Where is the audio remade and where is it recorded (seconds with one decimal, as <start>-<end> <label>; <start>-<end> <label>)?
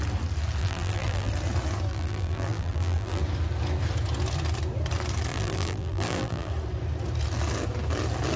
0.0-0.6 recorded; 0.6-1.3 remade; 1.3-1.9 recorded; 1.9-3.2 remade; 3.2-5.3 recorded; 5.3-6.5 remade; 6.5-8.4 recorded